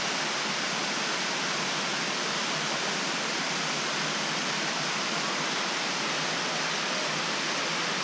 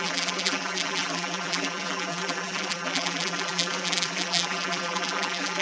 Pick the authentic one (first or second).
first